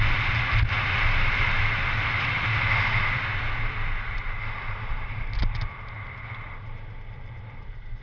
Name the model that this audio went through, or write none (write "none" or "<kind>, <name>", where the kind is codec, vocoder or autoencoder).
none